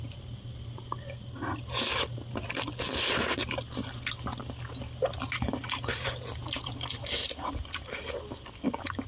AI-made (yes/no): no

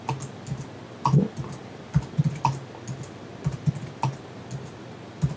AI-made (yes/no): no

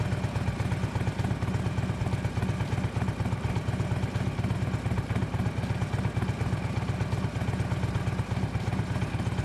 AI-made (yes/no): no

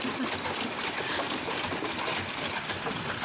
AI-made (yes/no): no